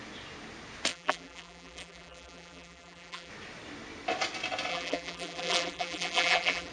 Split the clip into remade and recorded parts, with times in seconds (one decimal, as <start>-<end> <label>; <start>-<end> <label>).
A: 0.0-0.9 recorded; 0.9-3.3 remade; 3.3-4.7 recorded; 4.7-6.7 remade

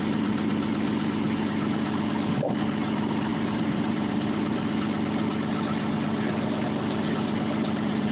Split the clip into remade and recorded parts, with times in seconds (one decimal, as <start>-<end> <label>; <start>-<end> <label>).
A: 0.0-3.3 recorded; 3.3-4.6 remade; 4.6-8.1 recorded

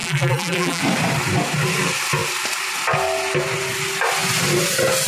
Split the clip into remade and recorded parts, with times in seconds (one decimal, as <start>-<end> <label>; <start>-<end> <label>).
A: 0.0-0.8 remade; 0.8-5.1 recorded